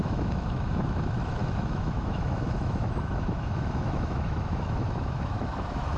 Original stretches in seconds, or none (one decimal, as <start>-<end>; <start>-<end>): none